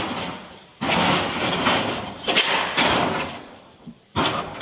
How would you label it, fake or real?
fake